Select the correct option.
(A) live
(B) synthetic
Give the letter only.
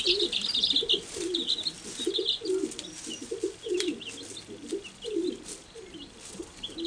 A